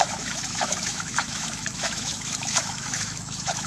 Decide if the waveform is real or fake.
fake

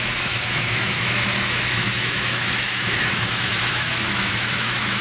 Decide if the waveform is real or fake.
fake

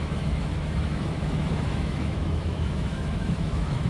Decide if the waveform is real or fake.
fake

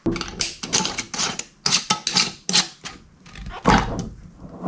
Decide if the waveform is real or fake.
real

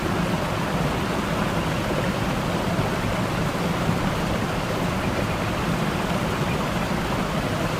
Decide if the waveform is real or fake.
real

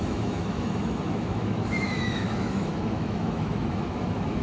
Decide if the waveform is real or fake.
fake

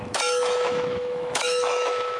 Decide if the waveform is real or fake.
fake